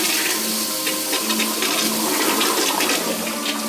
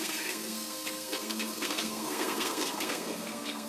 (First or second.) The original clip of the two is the first